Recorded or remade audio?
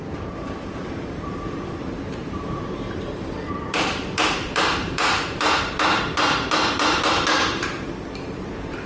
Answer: remade